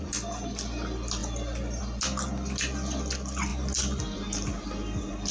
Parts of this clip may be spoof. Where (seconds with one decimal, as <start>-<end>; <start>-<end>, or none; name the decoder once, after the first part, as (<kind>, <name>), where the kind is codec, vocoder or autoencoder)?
1.2-1.8 (vocoder, BigVGAN v2)